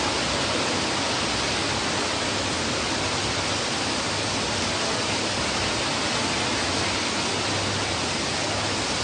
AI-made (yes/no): no